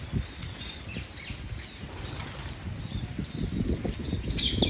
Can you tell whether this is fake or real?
real